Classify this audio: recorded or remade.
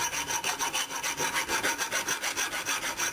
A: recorded